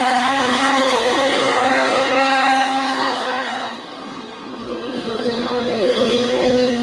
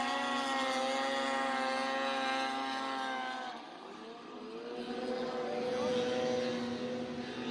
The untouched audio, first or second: second